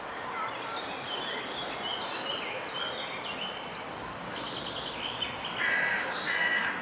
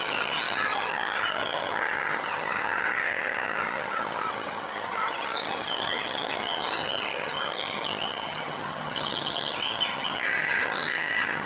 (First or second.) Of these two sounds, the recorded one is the first